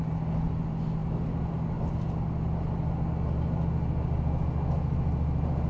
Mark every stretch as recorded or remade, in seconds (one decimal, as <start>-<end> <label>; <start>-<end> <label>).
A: 0.0-5.7 recorded